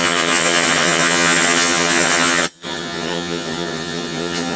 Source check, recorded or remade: remade